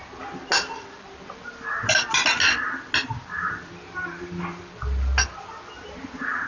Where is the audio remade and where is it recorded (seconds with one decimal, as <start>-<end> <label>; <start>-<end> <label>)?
0.0-6.5 recorded